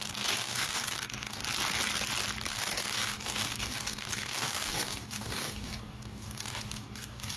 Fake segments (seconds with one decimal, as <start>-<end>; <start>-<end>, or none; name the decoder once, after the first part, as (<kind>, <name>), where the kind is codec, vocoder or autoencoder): 0.0-1.4 (codec, DAC); 2.5-7.4